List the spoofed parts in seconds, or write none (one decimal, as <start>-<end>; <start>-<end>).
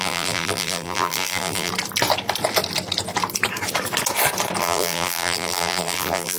0.0-1.7; 4.6-6.4